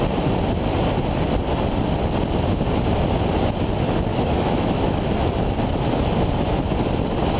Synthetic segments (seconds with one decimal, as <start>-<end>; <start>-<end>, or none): 4.1-5.1

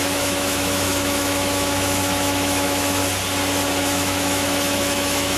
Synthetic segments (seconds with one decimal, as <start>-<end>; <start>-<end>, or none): 0.0-3.0; 3.8-5.4

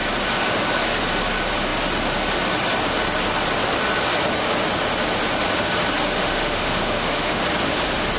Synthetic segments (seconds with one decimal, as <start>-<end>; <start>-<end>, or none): 6.2-7.4

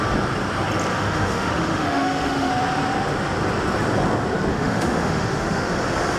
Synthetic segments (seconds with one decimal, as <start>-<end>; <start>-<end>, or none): 0.9-2.5; 4.5-5.7